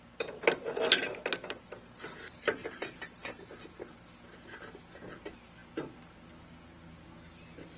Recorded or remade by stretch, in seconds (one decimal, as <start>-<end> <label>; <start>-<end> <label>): 0.0-7.8 recorded

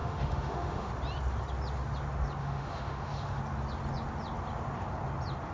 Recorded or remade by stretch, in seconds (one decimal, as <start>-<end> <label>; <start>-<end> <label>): 0.0-0.9 remade; 0.9-2.4 recorded; 2.4-3.4 remade; 3.4-5.5 recorded

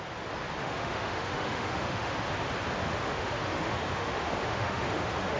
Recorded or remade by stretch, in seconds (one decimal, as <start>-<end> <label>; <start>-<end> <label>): 0.0-0.6 recorded; 0.6-2.1 remade; 2.1-2.8 recorded; 2.8-5.4 remade